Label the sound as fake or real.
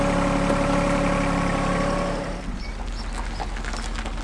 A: real